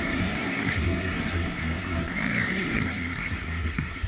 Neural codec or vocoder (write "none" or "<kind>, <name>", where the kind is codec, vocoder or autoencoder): codec, SNAC